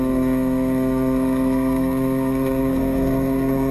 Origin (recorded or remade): remade